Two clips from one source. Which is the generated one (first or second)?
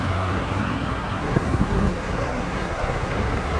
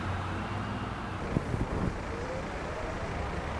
first